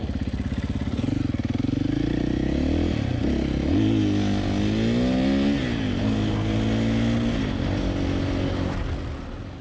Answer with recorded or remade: recorded